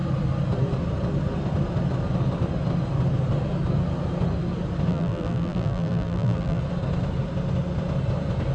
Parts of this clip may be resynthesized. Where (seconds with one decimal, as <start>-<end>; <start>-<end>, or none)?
4.9-6.6